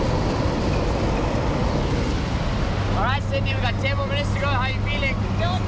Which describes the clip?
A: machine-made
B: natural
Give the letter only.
B